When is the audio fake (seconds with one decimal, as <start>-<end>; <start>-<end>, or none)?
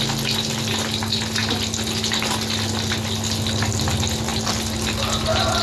none